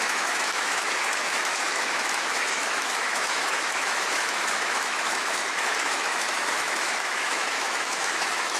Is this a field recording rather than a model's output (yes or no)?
no